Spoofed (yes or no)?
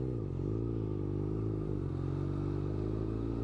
no